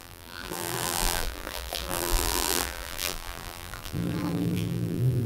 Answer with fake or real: fake